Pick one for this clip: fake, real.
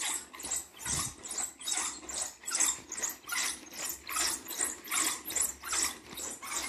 real